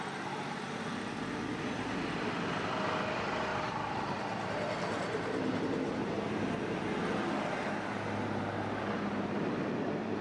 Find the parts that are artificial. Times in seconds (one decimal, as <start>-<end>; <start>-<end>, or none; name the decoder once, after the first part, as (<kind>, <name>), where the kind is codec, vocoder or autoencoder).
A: 3.5-5.6 (vocoder, BigVGAN v2)